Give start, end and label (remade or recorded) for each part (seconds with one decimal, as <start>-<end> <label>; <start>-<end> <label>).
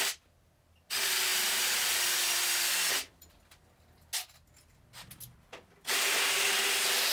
0.0-7.1 recorded